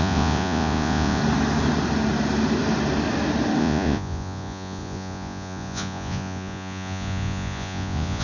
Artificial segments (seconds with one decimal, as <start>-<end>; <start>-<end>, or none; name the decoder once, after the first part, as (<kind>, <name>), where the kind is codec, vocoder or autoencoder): 0.0-1.2 (vocoder, Vocos); 3.6-8.2